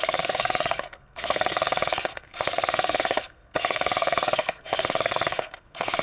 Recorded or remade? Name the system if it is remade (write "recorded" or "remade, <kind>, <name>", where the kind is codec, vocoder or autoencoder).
remade, codec, SNAC